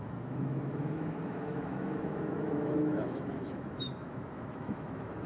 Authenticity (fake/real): fake